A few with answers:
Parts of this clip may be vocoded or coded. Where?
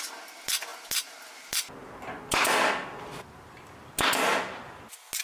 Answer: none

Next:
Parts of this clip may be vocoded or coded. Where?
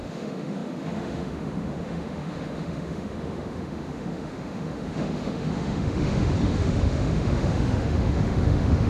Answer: 0.0-8.9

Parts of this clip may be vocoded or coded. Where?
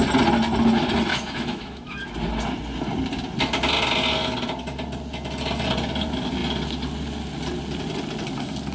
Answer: 1.1-2.0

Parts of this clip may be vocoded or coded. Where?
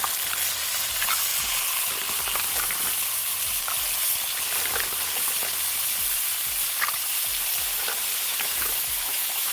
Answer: 8.3-9.5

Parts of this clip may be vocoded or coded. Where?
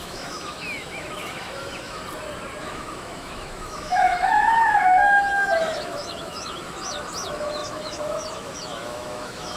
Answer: 0.0-2.0; 2.6-9.6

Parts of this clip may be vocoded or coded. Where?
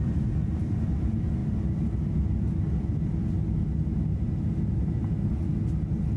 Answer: none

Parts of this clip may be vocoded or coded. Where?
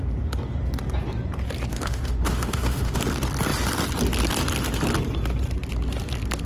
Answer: 1.7-3.0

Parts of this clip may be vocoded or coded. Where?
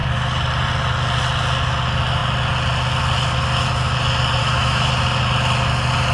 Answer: 4.4-4.9